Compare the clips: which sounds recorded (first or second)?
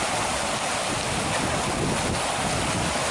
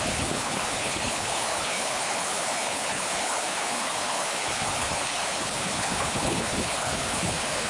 first